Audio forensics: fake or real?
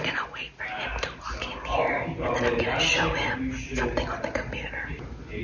real